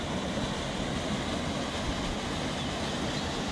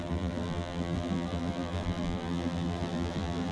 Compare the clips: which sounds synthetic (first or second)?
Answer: second